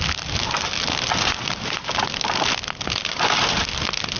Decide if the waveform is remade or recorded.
recorded